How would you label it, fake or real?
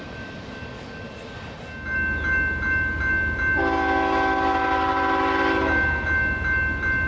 real